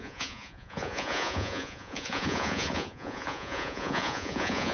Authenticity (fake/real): fake